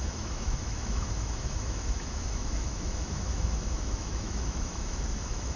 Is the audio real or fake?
fake